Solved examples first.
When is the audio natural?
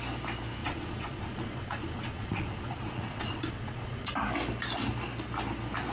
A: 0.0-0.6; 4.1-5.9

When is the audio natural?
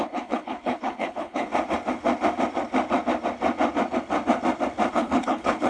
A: 1.5-4.9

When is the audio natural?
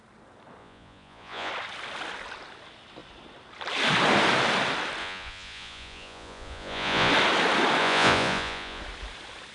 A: 0.0-0.6; 1.5-5.0; 7.1-7.8; 8.8-9.5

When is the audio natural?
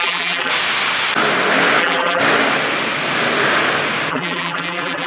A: 0.5-1.8; 2.2-4.1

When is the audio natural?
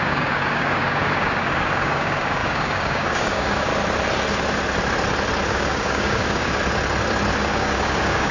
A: 3.7-5.5; 6.6-7.3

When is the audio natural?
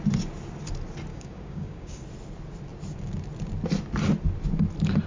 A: 0.0-1.1; 2.0-5.1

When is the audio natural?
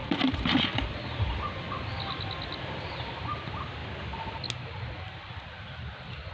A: 3.8-4.8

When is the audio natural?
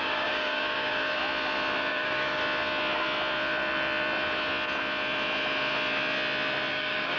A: 1.2-1.9; 2.4-6.7